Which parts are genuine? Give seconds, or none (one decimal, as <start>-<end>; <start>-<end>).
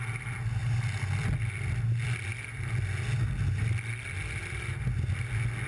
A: 0.0-5.7